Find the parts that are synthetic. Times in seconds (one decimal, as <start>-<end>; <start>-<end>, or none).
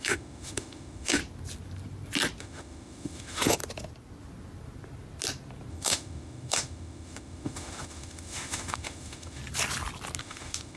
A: 0.0-1.2; 2.4-3.6; 5.7-9.4; 10.2-10.8